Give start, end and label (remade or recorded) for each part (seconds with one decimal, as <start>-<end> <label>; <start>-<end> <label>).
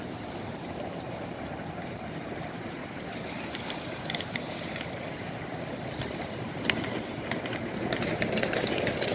0.0-2.8 remade; 2.8-3.3 recorded; 3.3-9.1 remade